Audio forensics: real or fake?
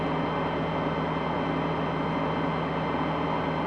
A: real